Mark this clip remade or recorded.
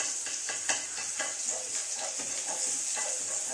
recorded